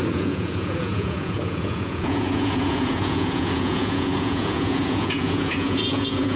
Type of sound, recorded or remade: remade